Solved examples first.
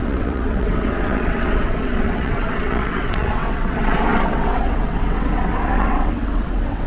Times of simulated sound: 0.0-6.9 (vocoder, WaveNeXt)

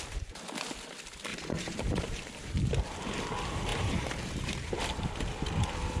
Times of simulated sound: 1.3-2.8 (vocoder, BigVGAN v2); 3.7-4.9

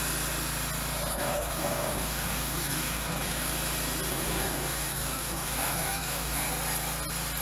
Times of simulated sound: 1.1-3.5 (codec, DAC); 4.1-6.5

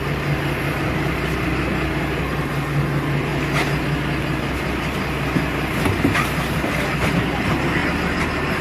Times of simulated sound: none